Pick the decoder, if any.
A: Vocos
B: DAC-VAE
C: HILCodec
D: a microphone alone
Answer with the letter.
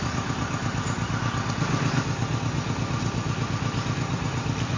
D